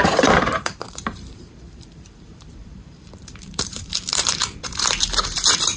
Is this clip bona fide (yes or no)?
no